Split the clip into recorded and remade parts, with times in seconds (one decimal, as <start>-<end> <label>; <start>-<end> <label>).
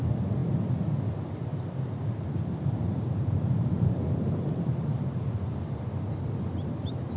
0.0-1.5 recorded; 1.5-5.8 remade; 5.8-7.2 recorded